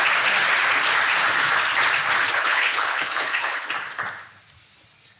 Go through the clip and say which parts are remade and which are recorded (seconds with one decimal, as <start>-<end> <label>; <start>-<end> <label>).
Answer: 0.0-2.3 recorded; 2.3-3.7 remade; 3.7-5.2 recorded